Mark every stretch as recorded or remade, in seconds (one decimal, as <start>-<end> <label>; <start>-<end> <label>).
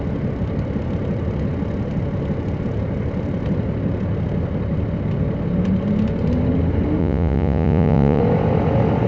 0.0-7.0 recorded; 7.0-8.2 remade; 8.2-9.1 recorded